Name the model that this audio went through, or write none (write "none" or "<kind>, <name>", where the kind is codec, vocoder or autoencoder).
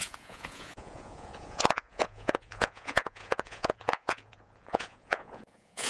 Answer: vocoder, Vocos